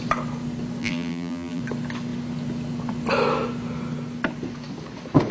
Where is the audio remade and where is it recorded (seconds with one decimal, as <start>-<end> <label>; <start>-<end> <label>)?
0.0-0.8 recorded; 0.8-1.6 remade; 1.6-5.3 recorded